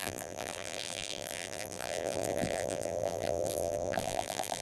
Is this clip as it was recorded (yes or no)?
no